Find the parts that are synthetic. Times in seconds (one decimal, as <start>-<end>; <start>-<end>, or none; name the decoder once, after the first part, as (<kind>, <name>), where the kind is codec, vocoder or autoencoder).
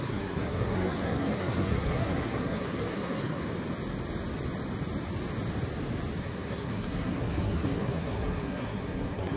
0.0-3.4 (codec, SNAC); 6.2-9.4